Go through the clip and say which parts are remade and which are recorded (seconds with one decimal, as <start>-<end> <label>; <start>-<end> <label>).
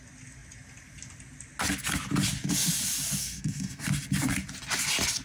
0.0-3.2 recorded; 3.2-3.8 remade; 3.8-5.2 recorded